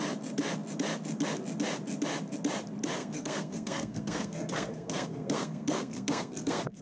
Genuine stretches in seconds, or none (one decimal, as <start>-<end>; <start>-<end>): 0.0-3.0